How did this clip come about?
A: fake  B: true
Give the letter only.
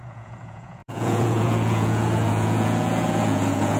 A